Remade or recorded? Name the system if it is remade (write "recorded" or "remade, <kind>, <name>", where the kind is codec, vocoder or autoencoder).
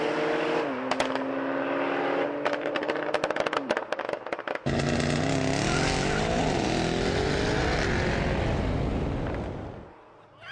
recorded